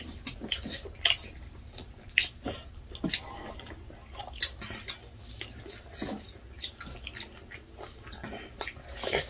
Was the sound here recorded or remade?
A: recorded